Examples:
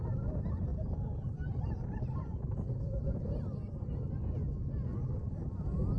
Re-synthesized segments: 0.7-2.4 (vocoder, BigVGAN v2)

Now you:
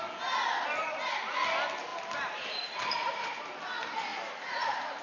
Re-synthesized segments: 1.9-3.6 (vocoder, BigVGAN v2); 4.1-5.0

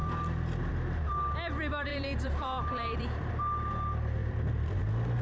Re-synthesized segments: 1.9-3.3 (vocoder, BigVGAN v2); 4.2-4.8

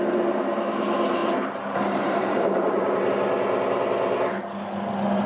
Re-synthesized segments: 1.2-3.1 (vocoder, BigVGAN v2)